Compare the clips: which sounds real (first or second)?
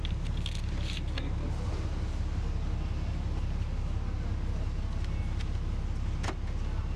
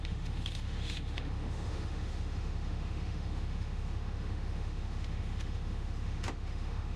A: first